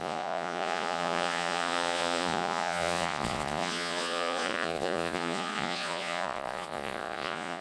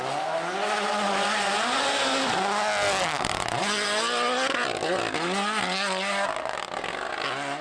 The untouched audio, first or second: second